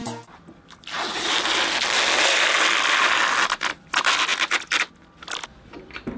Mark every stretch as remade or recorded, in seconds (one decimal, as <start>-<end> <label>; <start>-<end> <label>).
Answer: 0.0-6.2 recorded